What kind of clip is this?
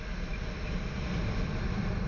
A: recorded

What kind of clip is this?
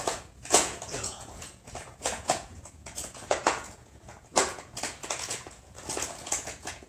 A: remade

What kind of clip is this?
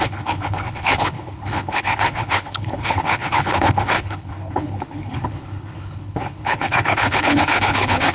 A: remade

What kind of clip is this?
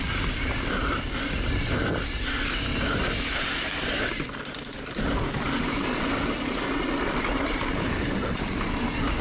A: recorded